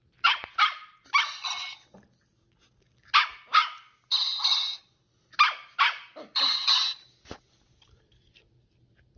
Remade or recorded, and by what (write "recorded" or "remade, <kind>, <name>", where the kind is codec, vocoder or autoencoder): recorded